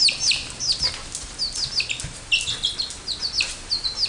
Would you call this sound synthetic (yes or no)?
no